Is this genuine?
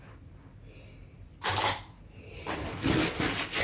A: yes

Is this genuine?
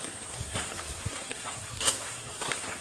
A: no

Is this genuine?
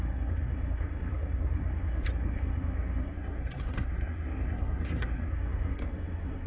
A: no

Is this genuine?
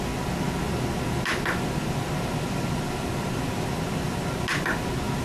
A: yes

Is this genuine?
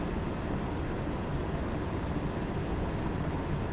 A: yes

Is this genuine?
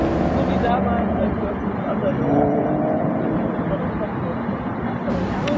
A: yes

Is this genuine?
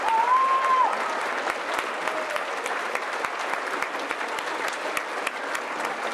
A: yes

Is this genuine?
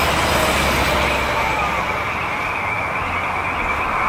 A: yes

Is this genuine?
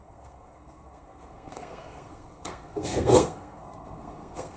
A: no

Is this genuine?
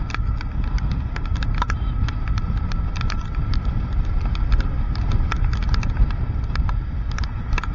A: yes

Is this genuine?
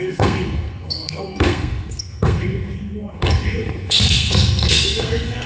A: no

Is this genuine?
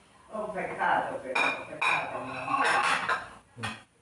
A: yes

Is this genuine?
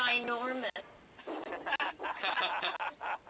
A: yes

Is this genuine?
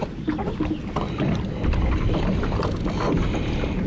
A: yes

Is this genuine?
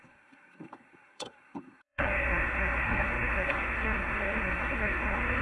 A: no